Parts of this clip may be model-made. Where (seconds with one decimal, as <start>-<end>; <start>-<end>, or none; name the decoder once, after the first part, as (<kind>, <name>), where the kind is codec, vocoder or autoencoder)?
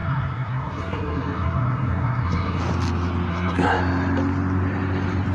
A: 0.0-2.6 (codec, SNAC); 3.3-3.8